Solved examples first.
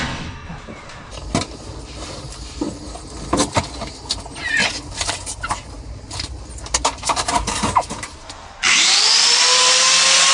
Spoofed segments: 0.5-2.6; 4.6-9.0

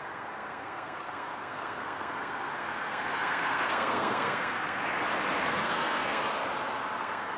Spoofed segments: 0.0-4.8; 5.4-6.2; 7.0-7.4

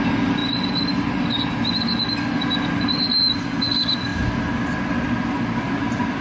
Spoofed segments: none

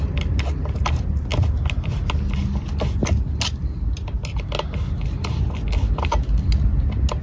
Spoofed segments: none